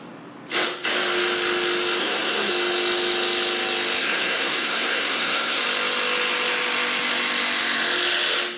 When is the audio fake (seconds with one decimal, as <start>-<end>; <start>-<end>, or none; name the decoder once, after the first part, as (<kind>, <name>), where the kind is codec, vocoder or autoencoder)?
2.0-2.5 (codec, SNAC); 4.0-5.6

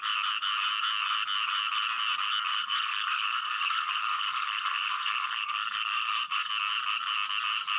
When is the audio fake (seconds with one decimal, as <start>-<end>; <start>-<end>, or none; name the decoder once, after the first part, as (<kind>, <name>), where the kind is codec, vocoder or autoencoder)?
2.5-6.5 (codec, SNAC)

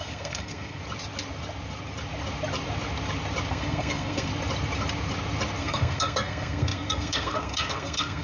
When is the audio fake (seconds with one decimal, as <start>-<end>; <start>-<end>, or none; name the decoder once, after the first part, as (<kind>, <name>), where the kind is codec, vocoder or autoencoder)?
0.0-0.8 (codec, SNAC); 3.5-4.3; 5.6-8.2

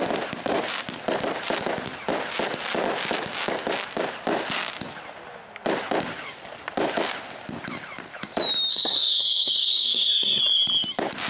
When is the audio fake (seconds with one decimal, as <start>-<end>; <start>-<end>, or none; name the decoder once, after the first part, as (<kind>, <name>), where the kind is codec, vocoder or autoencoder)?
8.7-10.4 (codec, SNAC)